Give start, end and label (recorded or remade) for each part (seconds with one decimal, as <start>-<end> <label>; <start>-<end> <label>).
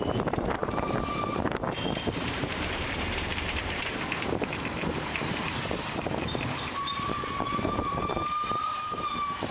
0.0-9.5 remade